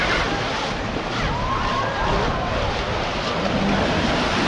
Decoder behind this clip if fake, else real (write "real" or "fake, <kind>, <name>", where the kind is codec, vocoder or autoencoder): real